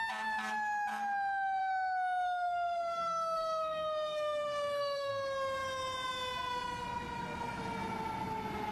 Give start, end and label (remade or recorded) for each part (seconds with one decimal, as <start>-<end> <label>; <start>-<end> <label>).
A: 0.0-1.6 recorded; 1.6-5.1 remade; 5.1-8.7 recorded